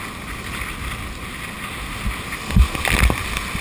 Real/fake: real